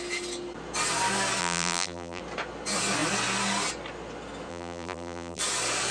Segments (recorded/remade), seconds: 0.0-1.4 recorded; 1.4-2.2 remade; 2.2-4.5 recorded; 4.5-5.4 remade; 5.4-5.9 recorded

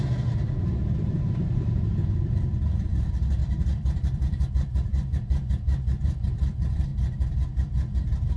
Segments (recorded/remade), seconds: 0.0-3.4 remade; 3.4-4.5 recorded; 4.5-6.9 remade; 6.9-8.0 recorded; 8.0-8.4 remade